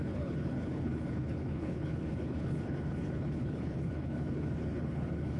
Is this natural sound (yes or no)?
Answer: no